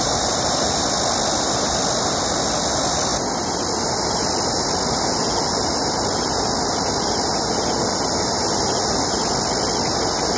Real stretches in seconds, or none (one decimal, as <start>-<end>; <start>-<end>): 0.0-10.4